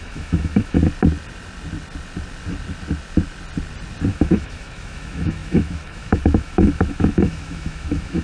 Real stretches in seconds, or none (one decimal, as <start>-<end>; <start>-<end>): 0.8-4.1